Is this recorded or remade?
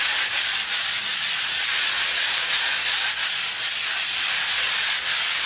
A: recorded